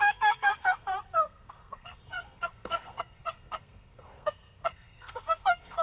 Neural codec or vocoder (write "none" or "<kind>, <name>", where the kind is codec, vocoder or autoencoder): codec, SNAC